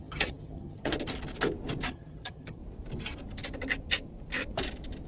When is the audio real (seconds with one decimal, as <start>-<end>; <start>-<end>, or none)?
0.9-1.9; 2.6-5.1